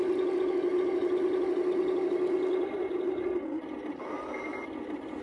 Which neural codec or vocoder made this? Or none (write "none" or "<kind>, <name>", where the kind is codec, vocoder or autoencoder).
none